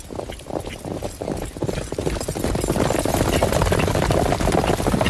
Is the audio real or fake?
real